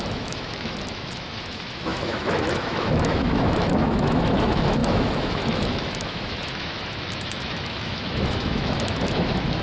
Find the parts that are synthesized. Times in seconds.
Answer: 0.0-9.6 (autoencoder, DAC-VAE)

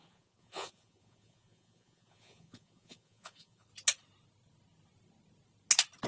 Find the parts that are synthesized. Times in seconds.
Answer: 0.0-3.7 (vocoder, Vocos)